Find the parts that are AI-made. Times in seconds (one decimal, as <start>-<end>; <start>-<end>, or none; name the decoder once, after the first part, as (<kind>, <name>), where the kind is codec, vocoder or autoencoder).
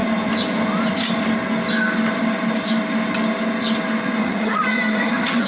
4.2-5.5 (vocoder, HiFi-GAN)